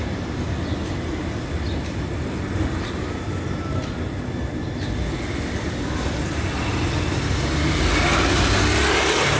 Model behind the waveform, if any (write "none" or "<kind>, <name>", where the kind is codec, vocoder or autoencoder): none